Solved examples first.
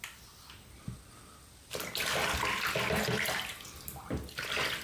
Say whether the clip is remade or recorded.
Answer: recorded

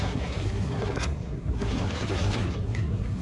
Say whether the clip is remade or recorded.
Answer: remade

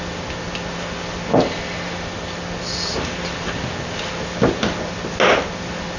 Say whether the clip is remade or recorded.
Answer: recorded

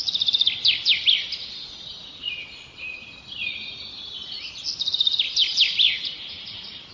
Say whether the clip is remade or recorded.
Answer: recorded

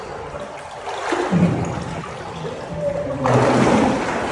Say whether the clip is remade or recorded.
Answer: recorded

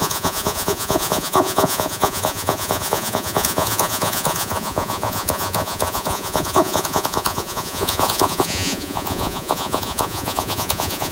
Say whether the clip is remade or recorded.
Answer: remade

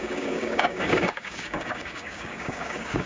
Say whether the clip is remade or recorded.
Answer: remade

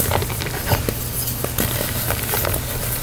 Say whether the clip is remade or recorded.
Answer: remade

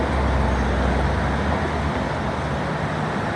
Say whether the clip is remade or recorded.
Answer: recorded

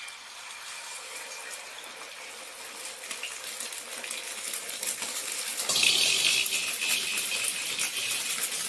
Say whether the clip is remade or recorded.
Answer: recorded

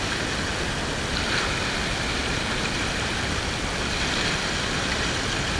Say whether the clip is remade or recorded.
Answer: recorded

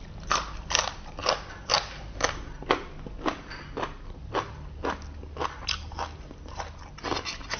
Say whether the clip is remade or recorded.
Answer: recorded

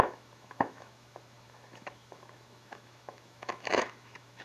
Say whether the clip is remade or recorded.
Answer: remade